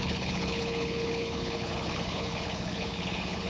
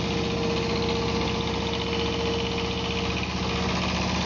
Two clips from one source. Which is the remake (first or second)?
first